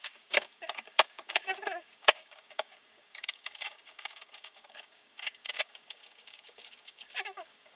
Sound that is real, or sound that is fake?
fake